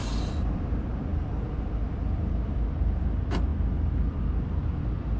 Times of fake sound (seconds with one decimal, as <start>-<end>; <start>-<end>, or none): none